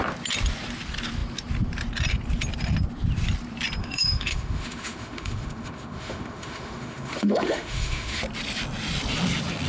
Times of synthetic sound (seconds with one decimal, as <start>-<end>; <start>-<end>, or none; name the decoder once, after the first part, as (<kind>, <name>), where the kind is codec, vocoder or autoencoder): 3.8-8.2 (autoencoder, DAC-VAE)